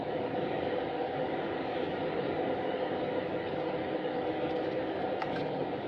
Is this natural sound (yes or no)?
no